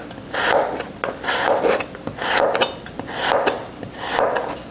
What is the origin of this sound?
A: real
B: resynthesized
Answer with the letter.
A